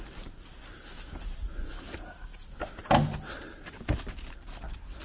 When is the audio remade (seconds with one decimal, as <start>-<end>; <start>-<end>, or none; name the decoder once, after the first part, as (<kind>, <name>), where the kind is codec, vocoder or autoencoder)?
none